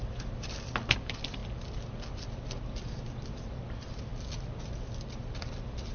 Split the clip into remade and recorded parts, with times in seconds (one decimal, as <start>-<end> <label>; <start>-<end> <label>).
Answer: 0.0-1.4 remade; 1.4-3.4 recorded; 3.4-4.1 remade; 4.1-5.3 recorded; 5.3-5.9 remade

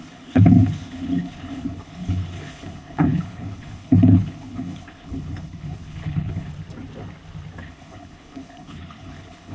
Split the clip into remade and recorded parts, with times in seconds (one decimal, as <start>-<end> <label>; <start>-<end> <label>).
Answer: 0.0-6.5 remade; 6.5-7.6 recorded; 7.6-9.5 remade

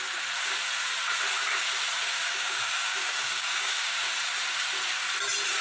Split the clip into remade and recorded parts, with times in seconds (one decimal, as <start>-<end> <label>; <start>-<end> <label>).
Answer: 0.0-2.3 recorded; 2.3-4.0 remade; 4.0-5.6 recorded

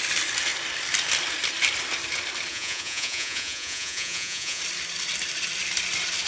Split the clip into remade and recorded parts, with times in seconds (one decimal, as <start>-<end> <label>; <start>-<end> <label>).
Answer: 0.0-2.5 recorded; 2.5-4.6 remade; 4.6-6.3 recorded

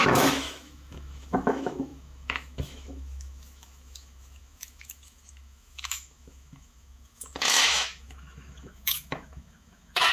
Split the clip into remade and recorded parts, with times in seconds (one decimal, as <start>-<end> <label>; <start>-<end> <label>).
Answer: 0.0-10.1 remade

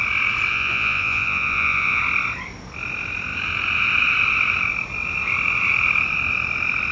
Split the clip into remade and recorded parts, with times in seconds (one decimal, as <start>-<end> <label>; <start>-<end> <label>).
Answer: 0.0-0.5 recorded; 0.5-2.0 remade; 2.0-6.9 recorded